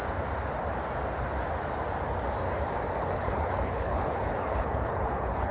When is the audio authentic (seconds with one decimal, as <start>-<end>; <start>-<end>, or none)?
0.0-3.0